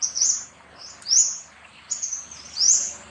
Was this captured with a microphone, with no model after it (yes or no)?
yes